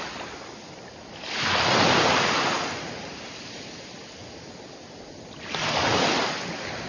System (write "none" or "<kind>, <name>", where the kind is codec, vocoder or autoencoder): none